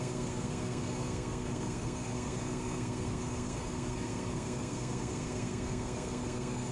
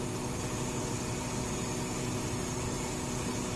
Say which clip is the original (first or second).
second